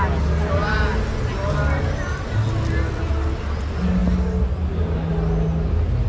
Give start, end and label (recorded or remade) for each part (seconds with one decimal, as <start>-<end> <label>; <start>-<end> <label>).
0.0-6.1 recorded